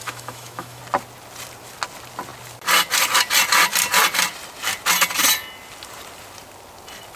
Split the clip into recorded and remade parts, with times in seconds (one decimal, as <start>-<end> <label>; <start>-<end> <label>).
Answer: 0.0-0.8 remade; 0.8-7.2 recorded